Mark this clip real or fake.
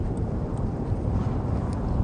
real